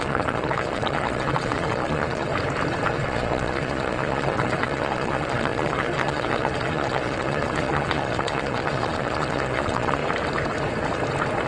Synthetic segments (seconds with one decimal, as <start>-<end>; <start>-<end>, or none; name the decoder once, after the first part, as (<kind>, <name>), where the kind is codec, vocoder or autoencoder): 0.0-2.3 (vocoder, Vocos); 2.9-10.0